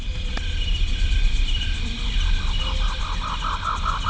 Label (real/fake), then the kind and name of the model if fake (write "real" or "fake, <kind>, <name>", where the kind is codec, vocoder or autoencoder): real